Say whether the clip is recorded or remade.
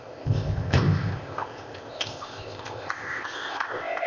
remade